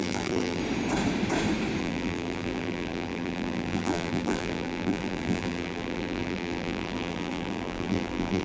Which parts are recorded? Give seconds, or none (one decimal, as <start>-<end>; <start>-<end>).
0.6-1.8